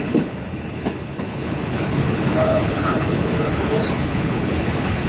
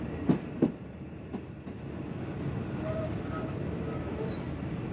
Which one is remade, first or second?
first